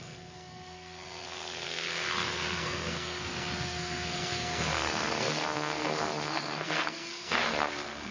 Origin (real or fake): fake